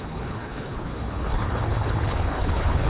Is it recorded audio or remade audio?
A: remade